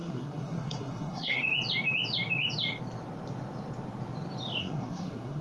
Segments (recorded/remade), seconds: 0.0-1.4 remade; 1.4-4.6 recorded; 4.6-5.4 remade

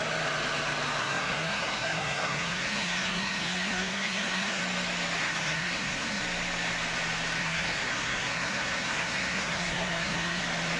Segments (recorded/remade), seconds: 0.0-1.0 recorded; 1.0-4.6 remade; 4.6-5.2 recorded; 5.2-6.2 remade; 6.2-7.4 recorded; 7.4-10.4 remade; 10.4-10.8 recorded

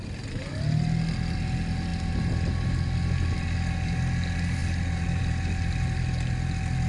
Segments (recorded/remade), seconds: 0.0-6.9 recorded

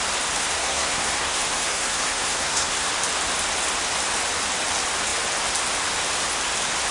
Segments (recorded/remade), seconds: 0.0-0.4 recorded; 0.4-2.9 remade; 2.9-6.9 recorded

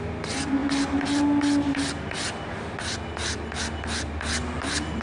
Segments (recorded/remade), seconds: 0.0-5.0 recorded

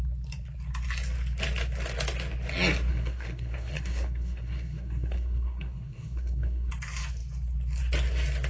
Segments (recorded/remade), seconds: 0.0-2.9 recorded; 2.9-6.7 remade; 6.7-8.5 recorded

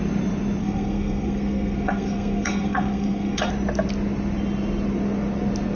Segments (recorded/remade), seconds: 0.0-0.6 recorded; 0.6-3.5 remade; 3.5-5.8 recorded